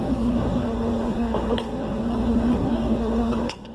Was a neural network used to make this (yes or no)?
yes